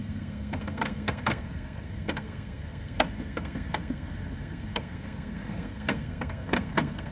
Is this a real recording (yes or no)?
no